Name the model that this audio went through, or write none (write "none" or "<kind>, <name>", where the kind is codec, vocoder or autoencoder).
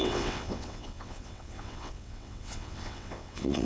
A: vocoder, WaveNeXt